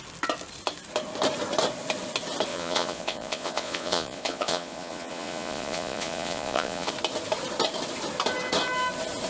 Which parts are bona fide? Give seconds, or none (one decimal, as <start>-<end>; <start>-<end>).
0.0-2.5; 6.9-9.3